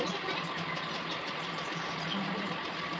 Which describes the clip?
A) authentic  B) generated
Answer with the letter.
A